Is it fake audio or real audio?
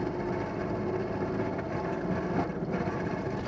fake